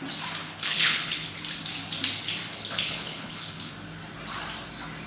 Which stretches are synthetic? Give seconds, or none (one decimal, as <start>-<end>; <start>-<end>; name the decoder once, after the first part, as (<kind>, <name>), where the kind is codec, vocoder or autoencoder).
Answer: 0.4-1.3 (codec, HILCodec); 2.5-3.7